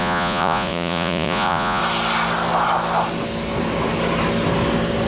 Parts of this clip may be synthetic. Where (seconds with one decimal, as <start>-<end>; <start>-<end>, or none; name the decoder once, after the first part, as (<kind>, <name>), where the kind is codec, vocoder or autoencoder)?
0.0-1.8 (vocoder, Vocos)